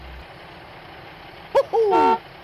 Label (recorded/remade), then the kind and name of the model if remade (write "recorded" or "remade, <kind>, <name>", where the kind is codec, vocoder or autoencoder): recorded